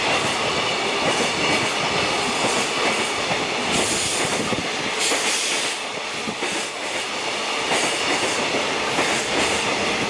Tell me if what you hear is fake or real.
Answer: real